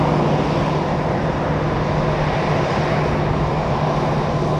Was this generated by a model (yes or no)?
no